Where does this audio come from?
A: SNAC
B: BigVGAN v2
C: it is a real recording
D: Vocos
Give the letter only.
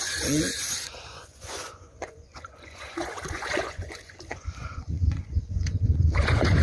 D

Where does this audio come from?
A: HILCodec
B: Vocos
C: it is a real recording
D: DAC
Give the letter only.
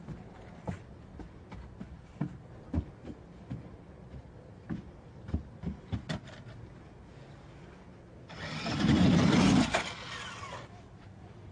C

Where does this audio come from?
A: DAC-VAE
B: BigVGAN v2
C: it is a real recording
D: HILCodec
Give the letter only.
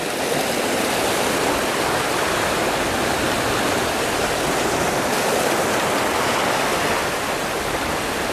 C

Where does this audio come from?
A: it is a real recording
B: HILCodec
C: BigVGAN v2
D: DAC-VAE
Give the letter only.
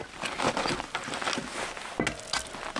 A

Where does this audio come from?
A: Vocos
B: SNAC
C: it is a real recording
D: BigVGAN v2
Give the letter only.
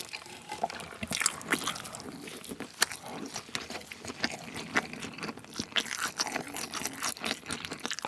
C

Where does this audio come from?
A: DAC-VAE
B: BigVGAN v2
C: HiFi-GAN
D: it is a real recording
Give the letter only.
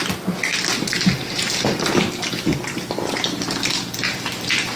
D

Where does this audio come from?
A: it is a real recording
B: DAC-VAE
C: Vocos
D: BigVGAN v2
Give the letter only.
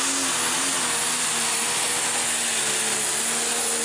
A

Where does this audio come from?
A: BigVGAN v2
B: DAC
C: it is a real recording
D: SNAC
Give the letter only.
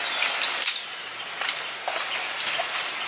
C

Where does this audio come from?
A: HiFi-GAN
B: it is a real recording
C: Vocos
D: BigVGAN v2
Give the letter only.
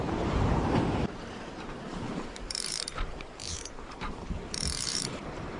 D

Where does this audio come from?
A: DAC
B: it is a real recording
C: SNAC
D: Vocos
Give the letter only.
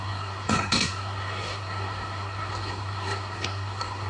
C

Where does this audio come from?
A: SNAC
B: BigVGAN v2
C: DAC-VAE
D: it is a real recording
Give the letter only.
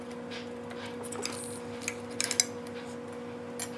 D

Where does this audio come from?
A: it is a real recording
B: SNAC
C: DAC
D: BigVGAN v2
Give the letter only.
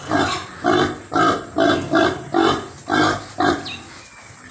A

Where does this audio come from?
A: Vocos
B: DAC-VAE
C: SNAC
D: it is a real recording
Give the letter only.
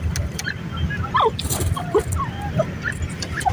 D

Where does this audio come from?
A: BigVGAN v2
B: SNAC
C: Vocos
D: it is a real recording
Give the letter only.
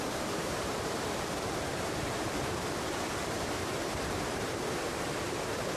A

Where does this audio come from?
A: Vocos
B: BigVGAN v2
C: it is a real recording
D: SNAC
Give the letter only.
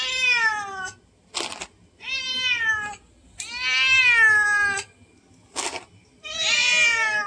C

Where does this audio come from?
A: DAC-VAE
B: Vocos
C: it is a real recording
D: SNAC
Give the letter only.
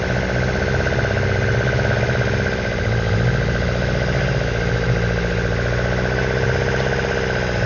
C